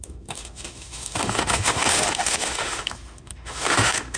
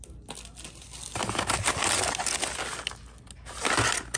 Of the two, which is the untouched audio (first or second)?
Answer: second